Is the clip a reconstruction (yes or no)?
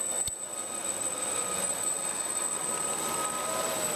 no